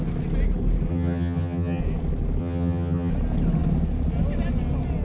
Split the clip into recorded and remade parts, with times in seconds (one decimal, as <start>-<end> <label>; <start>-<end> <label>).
0.0-0.9 recorded; 0.9-1.8 remade; 1.8-2.4 recorded; 2.4-3.1 remade; 3.1-5.0 recorded